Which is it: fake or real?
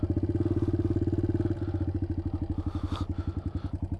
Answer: real